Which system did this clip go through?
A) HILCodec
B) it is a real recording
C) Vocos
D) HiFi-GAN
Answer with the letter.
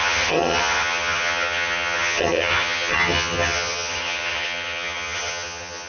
D